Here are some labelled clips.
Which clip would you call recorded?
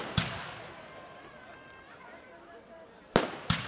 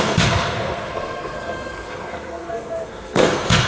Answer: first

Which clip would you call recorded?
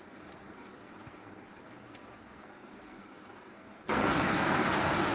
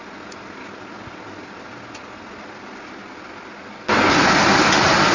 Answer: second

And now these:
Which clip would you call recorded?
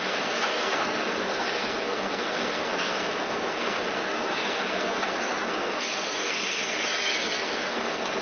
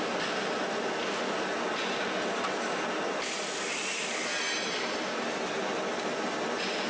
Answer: second